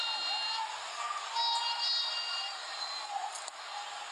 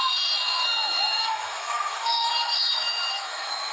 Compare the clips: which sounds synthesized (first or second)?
second